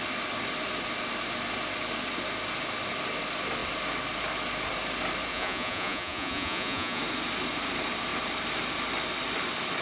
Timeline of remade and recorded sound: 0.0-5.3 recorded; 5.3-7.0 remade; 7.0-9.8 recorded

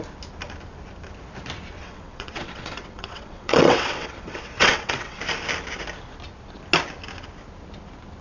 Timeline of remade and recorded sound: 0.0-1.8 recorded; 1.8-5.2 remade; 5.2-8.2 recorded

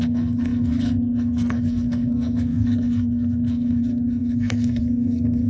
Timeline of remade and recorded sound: 0.0-5.5 remade

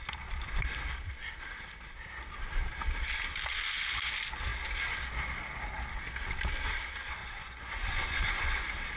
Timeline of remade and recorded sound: 0.0-7.2 recorded; 7.2-8.6 remade; 8.6-9.0 recorded

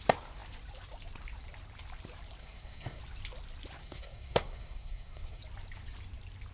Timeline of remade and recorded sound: 0.0-2.4 recorded; 2.4-3.0 remade; 3.0-3.8 recorded; 3.8-5.4 remade; 5.4-6.5 recorded